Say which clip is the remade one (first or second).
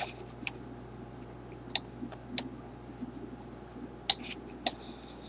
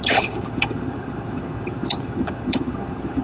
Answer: second